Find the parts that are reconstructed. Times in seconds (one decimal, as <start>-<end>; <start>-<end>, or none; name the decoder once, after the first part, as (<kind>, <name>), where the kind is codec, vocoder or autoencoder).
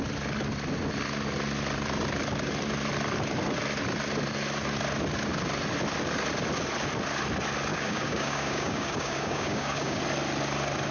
7.7-10.0 (codec, DAC)